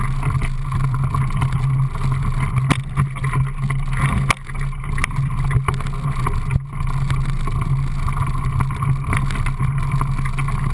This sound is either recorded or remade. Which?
recorded